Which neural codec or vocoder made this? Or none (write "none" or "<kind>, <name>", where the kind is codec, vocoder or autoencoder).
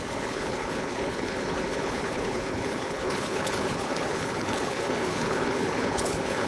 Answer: codec, HILCodec